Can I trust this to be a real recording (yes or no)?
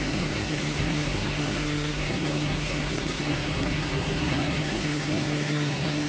no